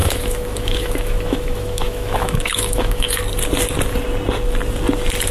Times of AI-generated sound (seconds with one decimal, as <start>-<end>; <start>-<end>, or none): 0.0-3.2